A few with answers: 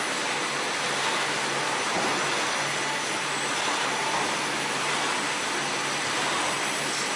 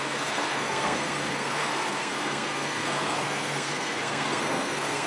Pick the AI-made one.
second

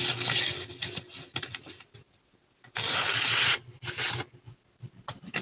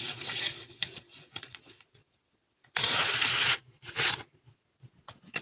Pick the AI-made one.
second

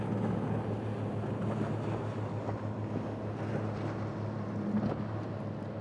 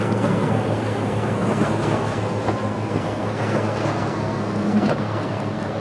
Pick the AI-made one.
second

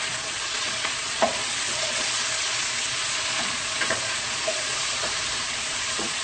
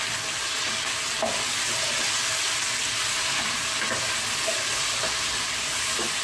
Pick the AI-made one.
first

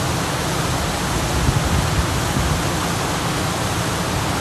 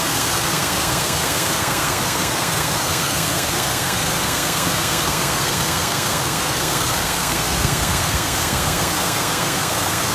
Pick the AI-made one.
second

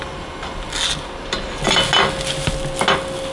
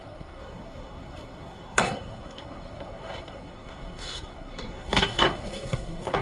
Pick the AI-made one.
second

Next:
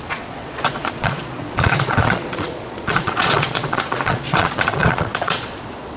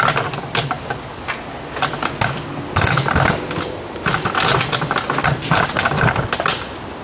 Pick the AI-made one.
first